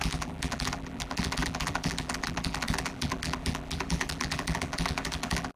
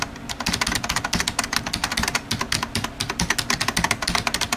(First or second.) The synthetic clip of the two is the first